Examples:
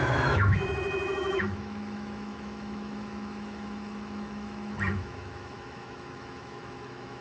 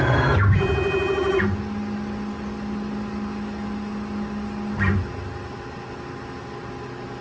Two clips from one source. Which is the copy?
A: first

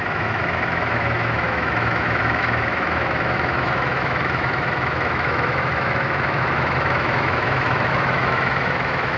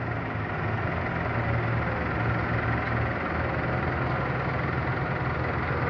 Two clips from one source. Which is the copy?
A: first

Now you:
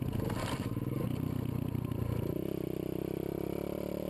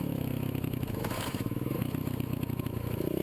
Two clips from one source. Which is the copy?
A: second